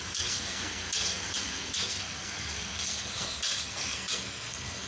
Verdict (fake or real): fake